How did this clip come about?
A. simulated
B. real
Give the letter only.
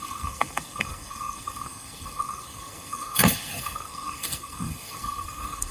A